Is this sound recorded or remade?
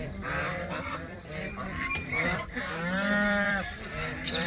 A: remade